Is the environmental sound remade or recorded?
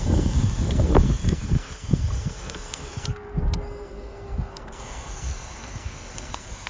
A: remade